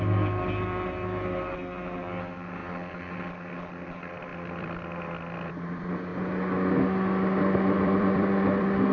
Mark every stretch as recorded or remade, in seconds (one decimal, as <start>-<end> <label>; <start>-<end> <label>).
0.0-2.6 remade; 2.6-3.3 recorded; 3.3-6.1 remade; 6.1-7.4 recorded; 7.4-8.9 remade